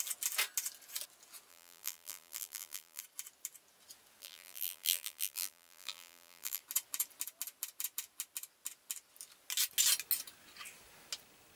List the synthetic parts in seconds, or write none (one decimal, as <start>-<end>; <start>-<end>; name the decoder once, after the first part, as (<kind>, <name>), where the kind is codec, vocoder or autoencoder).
1.5-3.0 (vocoder, BigVGAN v2); 4.2-6.6

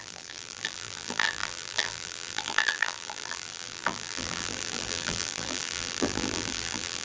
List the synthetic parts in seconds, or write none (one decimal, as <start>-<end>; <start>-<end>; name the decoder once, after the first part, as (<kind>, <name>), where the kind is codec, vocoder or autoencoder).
0.0-7.0 (vocoder, BigVGAN v2)